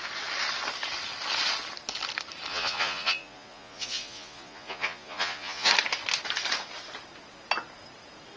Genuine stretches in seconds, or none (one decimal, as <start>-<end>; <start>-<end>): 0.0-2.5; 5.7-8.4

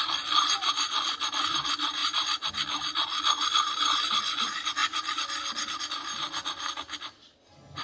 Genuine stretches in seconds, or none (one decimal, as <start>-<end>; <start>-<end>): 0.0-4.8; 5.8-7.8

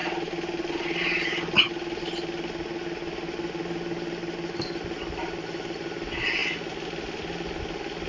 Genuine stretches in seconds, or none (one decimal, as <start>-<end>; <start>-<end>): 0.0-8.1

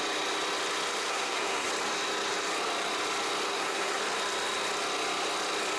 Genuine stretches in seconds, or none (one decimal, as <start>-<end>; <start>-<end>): 0.0-1.1; 1.7-3.5; 4.0-5.8

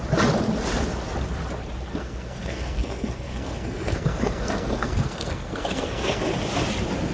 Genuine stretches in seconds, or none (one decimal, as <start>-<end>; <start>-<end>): 0.0-1.9; 6.2-7.1

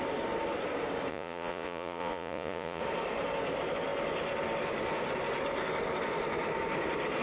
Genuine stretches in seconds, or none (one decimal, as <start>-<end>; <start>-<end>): 0.0-1.1; 2.8-7.2

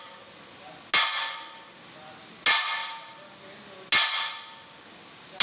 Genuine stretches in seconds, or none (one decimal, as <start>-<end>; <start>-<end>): 0.0-5.4

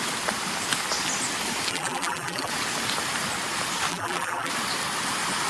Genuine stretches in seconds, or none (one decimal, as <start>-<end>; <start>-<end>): 0.0-1.7; 2.5-3.9; 4.5-5.5